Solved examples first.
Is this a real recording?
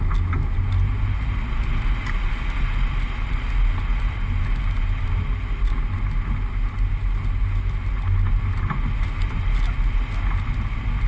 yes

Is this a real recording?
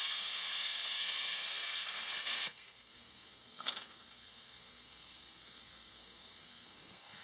no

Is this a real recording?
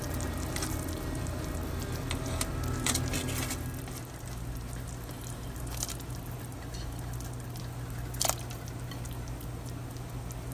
yes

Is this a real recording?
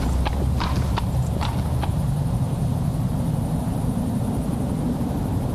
no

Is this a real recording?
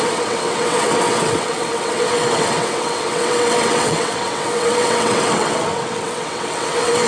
no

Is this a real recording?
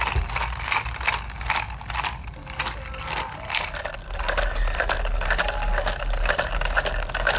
yes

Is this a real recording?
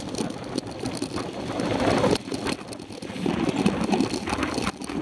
yes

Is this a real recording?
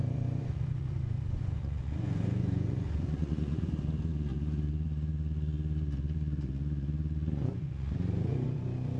no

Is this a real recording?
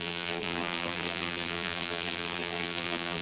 no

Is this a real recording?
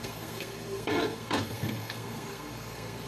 no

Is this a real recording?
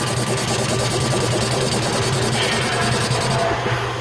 yes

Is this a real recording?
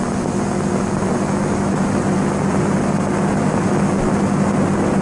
no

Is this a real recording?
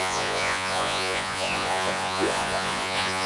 no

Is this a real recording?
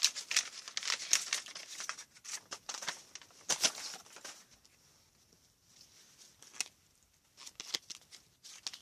yes